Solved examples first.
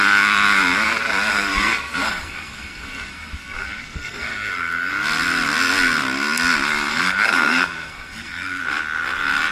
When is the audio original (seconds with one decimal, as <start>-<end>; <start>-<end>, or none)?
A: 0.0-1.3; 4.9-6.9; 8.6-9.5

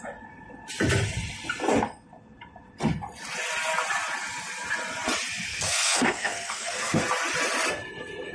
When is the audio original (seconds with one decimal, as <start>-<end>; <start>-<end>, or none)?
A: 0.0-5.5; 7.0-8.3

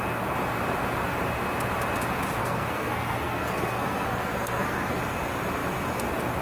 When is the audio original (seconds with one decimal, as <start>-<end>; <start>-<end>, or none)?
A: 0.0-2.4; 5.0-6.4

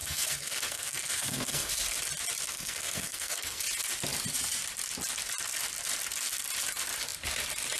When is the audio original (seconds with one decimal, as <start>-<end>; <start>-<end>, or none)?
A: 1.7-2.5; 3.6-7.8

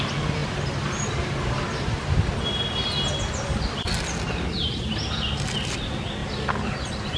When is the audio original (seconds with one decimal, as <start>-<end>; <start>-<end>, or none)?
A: 0.0-7.2

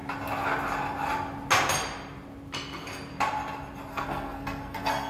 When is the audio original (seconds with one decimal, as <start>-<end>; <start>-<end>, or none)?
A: 0.0-3.9